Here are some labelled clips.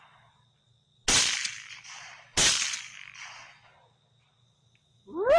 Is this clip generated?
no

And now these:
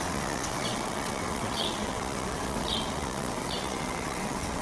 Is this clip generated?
yes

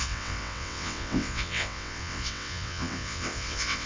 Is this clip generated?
yes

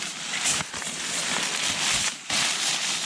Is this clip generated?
no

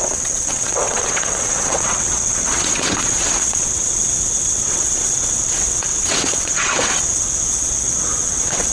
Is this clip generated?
yes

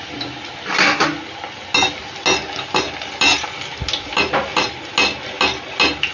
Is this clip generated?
no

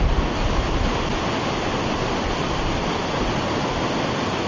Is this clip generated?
no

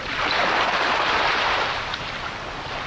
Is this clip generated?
no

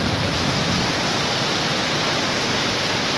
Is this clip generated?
no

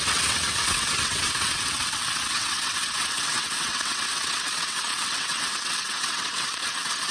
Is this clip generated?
yes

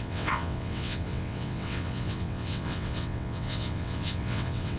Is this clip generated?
yes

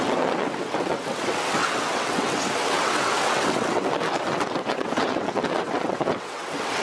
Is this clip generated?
yes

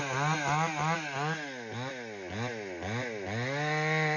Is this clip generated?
no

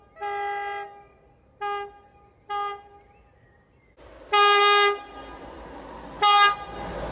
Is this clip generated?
no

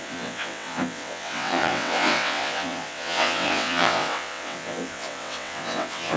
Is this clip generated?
yes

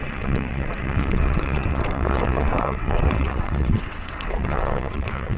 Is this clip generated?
yes